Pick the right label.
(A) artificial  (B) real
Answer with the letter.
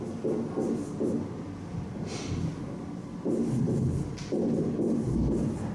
B